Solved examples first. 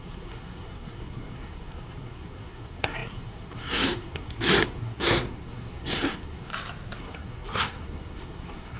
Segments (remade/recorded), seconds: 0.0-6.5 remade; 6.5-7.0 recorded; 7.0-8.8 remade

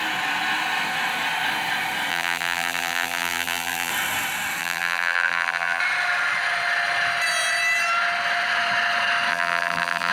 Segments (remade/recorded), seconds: 0.0-2.1 recorded; 2.1-3.9 remade; 3.9-4.6 recorded; 4.6-5.8 remade; 5.8-9.3 recorded; 9.3-10.1 remade

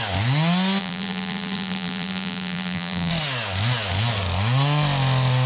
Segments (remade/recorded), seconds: 0.0-0.8 recorded; 0.8-3.1 remade; 3.1-5.5 recorded

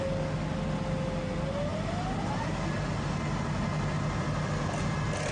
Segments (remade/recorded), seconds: 0.0-5.3 recorded

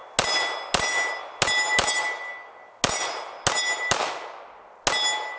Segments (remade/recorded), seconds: 0.0-5.4 recorded

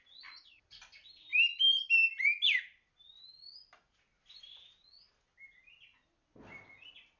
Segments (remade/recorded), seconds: 0.0-7.2 recorded